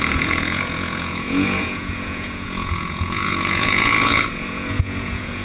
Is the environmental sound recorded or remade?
remade